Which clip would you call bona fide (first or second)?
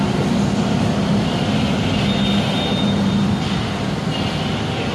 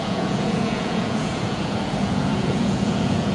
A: first